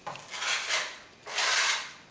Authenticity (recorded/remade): recorded